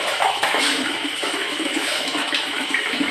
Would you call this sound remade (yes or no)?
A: yes